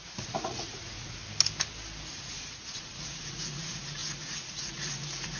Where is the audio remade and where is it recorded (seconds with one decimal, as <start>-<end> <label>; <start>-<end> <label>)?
0.0-1.2 remade; 1.2-2.2 recorded; 2.2-5.4 remade